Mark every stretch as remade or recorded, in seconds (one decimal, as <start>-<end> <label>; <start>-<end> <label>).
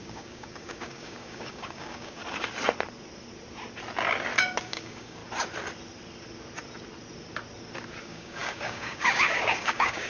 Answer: 0.0-2.2 remade; 2.2-4.6 recorded; 4.6-5.2 remade; 5.2-8.0 recorded; 8.0-10.1 remade